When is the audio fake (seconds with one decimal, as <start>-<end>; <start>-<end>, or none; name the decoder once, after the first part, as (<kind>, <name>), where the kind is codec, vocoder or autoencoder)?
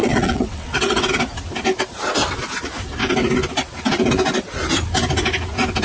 0.0-1.1 (vocoder, WaveNeXt)